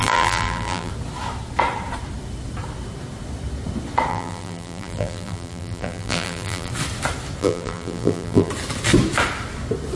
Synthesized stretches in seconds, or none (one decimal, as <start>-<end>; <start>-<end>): 0.0-0.9; 4.1-6.7; 7.4-8.5